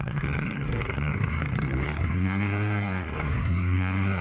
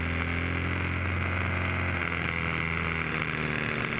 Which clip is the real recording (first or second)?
second